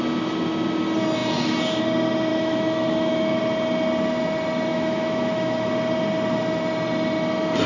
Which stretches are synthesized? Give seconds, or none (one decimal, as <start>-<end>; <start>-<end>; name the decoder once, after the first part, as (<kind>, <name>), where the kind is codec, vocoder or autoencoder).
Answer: 2.3-3.4 (autoencoder, DAC-VAE); 4.7-5.7